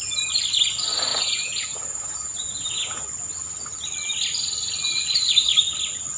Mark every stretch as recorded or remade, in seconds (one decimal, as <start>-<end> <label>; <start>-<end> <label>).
0.0-1.1 recorded; 1.1-3.0 remade; 3.0-6.2 recorded

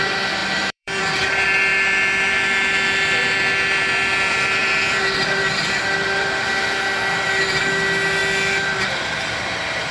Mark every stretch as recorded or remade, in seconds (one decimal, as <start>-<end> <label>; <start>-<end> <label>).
0.0-9.9 remade

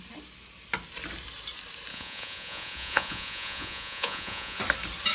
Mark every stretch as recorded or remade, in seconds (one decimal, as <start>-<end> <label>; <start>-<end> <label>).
0.0-1.9 recorded; 1.9-4.6 remade; 4.6-5.1 recorded